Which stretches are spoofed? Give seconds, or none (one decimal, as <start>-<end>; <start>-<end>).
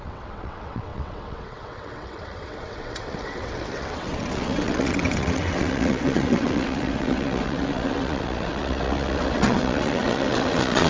0.0-10.9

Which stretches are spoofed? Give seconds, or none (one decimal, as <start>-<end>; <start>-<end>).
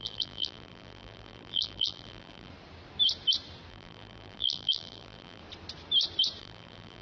0.0-2.5; 3.7-5.4; 6.4-7.0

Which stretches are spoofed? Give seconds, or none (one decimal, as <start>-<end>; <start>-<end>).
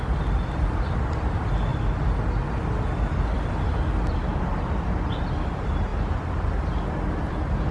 none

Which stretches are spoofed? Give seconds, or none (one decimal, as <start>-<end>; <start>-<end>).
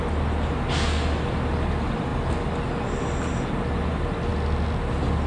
none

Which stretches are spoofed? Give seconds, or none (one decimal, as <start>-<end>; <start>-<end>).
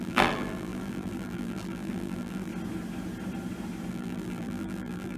0.0-2.5; 3.9-5.2